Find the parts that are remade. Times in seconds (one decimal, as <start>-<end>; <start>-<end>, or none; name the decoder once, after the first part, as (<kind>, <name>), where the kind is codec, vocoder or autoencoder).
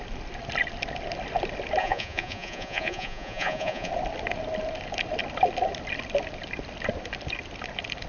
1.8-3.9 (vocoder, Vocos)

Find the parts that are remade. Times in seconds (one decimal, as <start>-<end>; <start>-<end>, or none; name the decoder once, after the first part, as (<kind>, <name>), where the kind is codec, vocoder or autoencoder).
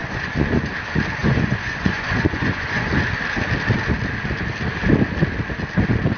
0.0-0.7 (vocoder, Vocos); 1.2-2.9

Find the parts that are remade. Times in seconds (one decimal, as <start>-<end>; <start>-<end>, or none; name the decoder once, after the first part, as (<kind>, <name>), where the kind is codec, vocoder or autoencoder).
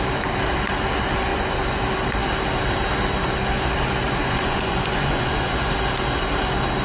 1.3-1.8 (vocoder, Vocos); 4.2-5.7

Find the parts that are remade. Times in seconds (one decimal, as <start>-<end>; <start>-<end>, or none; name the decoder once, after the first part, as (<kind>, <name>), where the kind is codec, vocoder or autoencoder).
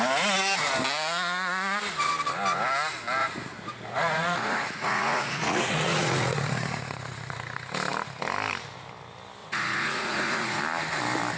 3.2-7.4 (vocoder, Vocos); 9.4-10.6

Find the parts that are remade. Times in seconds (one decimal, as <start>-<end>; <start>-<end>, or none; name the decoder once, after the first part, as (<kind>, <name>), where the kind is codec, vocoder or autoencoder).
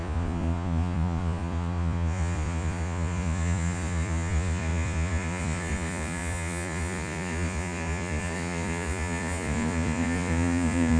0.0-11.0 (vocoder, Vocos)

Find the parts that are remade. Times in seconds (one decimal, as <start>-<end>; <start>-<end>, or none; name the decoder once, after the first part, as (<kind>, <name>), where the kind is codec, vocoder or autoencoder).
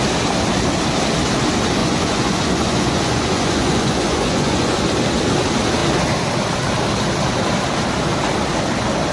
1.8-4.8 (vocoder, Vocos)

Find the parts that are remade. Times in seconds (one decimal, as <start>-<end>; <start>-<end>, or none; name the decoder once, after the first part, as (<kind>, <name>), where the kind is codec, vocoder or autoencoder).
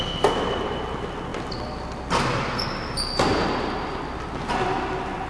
none